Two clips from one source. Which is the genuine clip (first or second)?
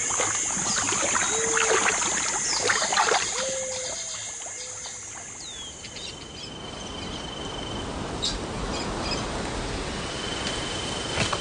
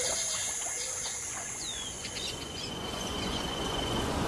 first